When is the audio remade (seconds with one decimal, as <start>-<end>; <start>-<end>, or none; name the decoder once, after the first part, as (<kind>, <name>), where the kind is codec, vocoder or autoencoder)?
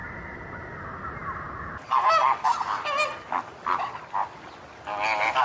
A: none